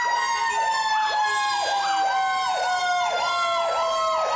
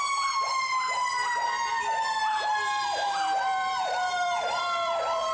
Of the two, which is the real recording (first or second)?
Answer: first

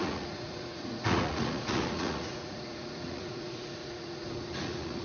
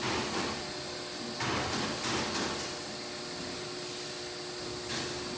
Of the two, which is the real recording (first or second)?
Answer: second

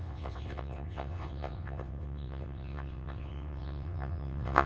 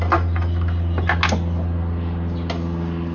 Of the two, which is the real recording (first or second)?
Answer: second